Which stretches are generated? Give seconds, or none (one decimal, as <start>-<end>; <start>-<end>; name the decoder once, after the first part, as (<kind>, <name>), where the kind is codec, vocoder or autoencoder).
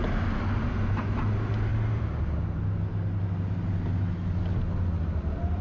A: none